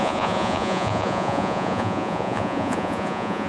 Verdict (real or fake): fake